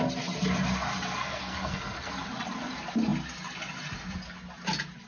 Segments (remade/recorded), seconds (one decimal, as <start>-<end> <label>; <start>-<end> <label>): 0.0-1.2 recorded; 1.2-2.1 remade; 2.1-5.1 recorded